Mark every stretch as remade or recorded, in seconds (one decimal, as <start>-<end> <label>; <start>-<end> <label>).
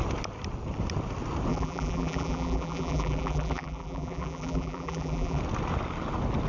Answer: 0.0-1.5 recorded; 1.5-5.4 remade; 5.4-6.5 recorded